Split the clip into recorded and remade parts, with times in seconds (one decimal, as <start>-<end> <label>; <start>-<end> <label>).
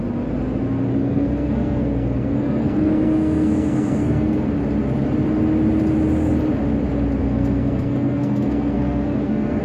0.0-1.0 recorded; 1.0-4.5 remade; 4.5-7.2 recorded; 7.2-9.6 remade